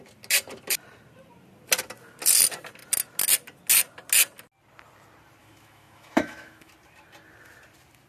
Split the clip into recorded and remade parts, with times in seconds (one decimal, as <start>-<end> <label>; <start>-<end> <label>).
0.0-5.4 recorded; 5.4-6.7 remade; 6.7-8.1 recorded